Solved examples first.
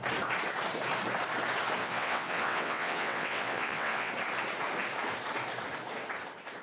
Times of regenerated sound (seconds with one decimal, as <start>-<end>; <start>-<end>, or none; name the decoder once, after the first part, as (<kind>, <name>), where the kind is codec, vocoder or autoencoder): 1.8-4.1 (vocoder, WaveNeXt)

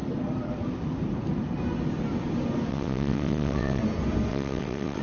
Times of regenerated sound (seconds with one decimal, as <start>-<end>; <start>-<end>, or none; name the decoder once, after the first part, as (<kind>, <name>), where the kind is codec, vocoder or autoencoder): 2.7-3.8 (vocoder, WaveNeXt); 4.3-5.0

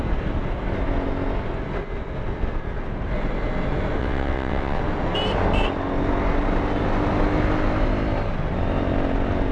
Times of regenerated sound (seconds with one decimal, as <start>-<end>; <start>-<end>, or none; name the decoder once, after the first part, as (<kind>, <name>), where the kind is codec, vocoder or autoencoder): 4.0-4.8 (vocoder, WaveNeXt)

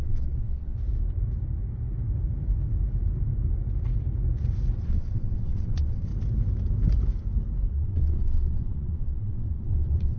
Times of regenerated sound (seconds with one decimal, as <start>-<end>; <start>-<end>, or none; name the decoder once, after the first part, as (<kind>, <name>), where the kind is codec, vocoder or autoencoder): 0.0-0.7 (vocoder, WaveNeXt); 4.8-6.1; 7.7-10.2

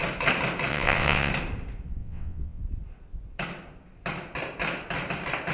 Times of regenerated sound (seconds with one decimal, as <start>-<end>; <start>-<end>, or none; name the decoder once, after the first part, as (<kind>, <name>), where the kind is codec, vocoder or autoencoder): 0.7-1.3 (vocoder, WaveNeXt); 2.0-2.6

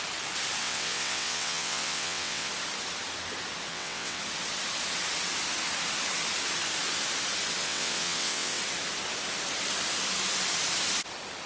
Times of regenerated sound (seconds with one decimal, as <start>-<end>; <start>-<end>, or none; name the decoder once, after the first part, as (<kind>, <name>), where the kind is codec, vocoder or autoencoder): 0.6-2.5 (vocoder, WaveNeXt); 3.7-4.2; 7.6-8.6

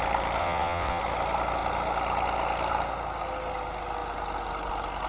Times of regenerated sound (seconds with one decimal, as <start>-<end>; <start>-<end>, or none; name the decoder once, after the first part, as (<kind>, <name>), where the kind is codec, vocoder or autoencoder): 0.4-1.0 (vocoder, WaveNeXt)